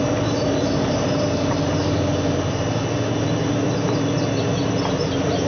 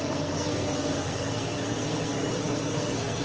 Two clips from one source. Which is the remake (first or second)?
second